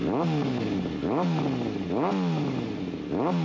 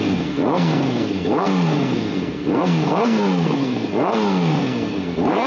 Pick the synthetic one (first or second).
second